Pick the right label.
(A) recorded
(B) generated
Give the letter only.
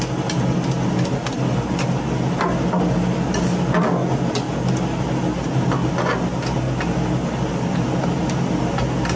A